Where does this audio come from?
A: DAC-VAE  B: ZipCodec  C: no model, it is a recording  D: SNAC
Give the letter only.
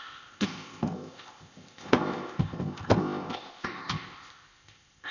B